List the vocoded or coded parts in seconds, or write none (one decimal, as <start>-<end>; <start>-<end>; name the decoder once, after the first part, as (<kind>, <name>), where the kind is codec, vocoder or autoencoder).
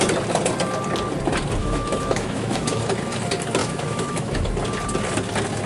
1.6-2.8 (autoencoder, DAC-VAE); 3.6-4.5